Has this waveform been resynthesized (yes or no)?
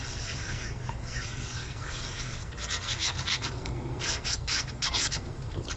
yes